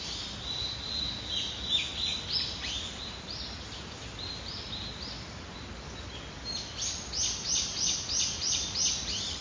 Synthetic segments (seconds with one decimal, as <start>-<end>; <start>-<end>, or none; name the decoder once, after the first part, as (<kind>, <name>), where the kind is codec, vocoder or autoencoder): none